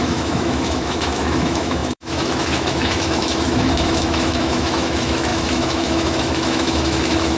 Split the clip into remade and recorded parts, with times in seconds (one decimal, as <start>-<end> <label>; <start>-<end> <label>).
0.0-7.4 remade